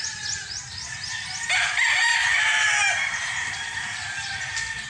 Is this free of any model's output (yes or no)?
yes